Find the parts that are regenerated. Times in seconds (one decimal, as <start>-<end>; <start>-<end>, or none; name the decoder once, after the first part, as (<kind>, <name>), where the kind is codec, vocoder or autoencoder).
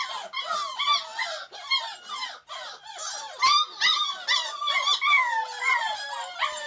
none